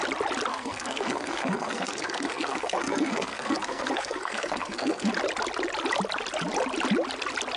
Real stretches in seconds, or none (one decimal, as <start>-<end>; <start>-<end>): 0.0-0.5; 5.1-7.6